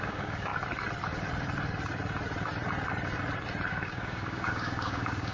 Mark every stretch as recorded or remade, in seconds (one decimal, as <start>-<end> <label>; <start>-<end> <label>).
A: 0.0-0.5 remade; 0.5-3.7 recorded; 3.7-5.3 remade